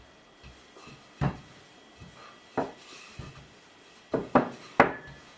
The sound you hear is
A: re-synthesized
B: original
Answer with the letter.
B